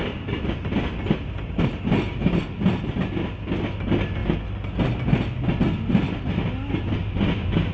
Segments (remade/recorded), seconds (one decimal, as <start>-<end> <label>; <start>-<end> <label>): 0.0-7.7 recorded